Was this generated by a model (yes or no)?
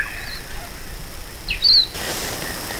no